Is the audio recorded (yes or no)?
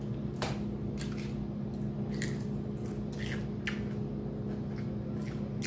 yes